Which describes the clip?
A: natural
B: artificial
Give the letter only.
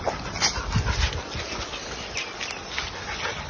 A